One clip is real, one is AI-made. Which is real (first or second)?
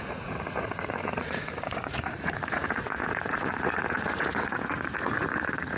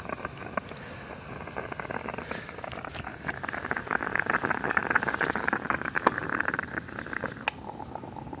second